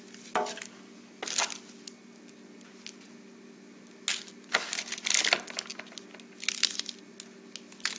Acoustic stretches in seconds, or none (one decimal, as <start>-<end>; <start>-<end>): 0.0-8.0